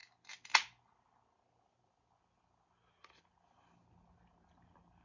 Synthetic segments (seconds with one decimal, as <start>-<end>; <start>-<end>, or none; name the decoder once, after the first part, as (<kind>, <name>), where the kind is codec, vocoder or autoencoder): none